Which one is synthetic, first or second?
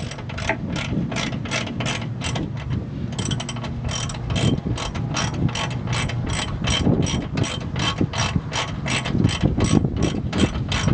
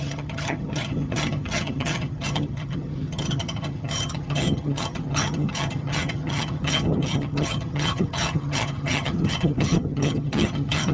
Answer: second